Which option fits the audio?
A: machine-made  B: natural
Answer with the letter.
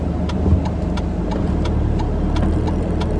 B